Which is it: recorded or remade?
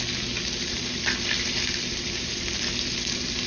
recorded